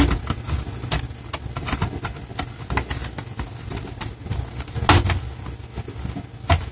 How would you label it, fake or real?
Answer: real